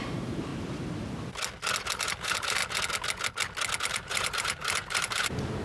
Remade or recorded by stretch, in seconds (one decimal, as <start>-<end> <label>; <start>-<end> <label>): 0.0-0.5 remade; 0.5-2.0 recorded; 2.0-2.6 remade; 2.6-3.8 recorded; 3.8-5.6 remade